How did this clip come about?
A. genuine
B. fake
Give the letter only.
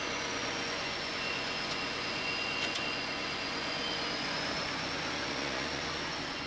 B